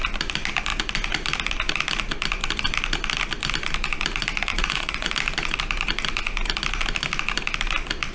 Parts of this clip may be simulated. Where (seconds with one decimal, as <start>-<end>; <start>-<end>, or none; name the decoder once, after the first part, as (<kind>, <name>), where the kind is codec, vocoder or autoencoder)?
4.5-5.1 (vocoder, Vocos)